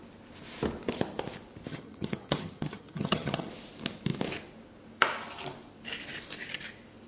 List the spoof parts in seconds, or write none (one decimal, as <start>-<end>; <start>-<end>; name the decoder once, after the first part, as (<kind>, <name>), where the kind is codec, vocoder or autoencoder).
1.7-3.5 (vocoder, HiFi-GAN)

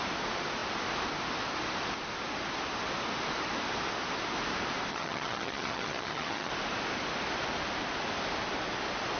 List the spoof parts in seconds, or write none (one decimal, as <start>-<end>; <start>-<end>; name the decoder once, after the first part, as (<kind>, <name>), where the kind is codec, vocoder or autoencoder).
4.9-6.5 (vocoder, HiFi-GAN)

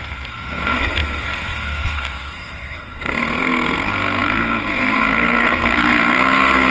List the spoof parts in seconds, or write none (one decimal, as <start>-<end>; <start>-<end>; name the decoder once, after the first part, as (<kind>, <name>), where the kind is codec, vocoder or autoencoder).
0.0-6.7 (codec, SNAC)

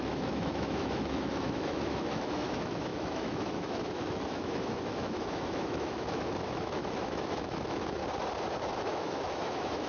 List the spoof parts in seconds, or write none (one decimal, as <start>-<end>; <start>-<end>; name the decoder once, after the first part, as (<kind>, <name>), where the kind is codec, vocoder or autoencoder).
0.0-8.0 (autoencoder, DAC-VAE); 8.7-9.9

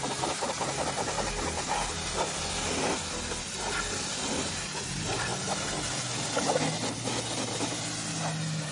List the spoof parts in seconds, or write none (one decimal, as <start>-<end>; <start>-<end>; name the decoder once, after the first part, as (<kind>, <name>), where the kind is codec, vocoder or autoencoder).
none

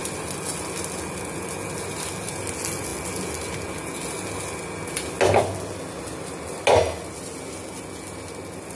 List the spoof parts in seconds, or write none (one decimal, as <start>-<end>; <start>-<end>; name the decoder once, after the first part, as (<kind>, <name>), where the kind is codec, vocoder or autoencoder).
none